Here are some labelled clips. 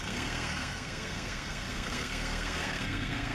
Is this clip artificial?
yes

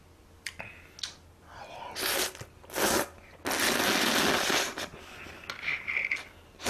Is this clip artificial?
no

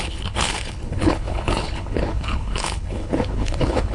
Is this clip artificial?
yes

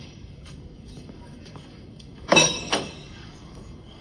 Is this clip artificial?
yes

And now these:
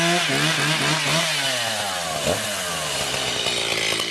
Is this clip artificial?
no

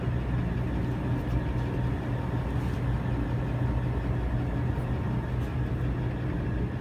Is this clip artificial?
no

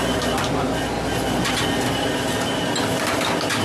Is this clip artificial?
no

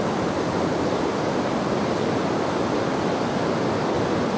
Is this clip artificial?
no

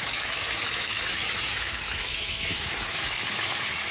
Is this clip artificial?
yes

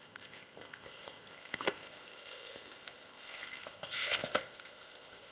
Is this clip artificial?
yes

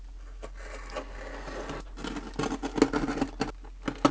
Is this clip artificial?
no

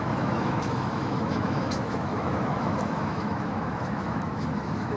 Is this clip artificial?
yes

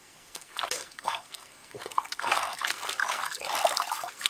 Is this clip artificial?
yes